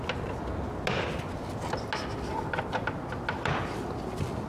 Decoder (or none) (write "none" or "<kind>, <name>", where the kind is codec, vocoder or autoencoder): none